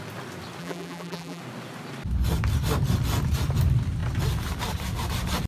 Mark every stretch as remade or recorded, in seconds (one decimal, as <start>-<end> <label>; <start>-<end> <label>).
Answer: 0.0-0.6 recorded; 0.6-1.4 remade; 1.4-5.5 recorded